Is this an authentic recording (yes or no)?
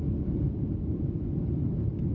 yes